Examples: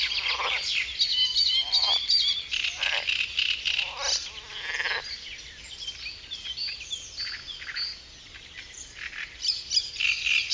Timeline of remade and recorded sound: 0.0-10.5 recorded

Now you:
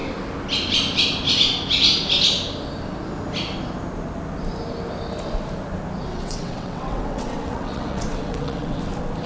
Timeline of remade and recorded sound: 0.0-6.1 recorded; 6.1-8.8 remade; 8.8-9.3 recorded

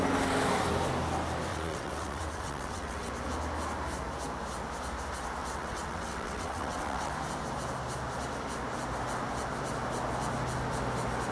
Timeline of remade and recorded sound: 0.0-1.5 recorded; 1.5-3.1 remade; 3.1-5.4 recorded; 5.4-7.1 remade; 7.1-11.3 recorded

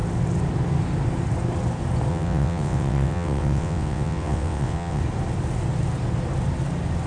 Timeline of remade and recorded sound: 0.0-2.1 recorded; 2.1-5.0 remade; 5.0-7.1 recorded

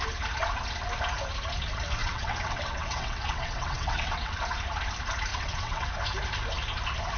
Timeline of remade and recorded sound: 0.0-2.0 recorded; 2.0-4.4 remade; 4.4-5.3 recorded; 5.3-5.9 remade; 5.9-7.2 recorded